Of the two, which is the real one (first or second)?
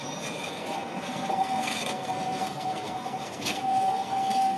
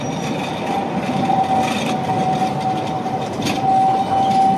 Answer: second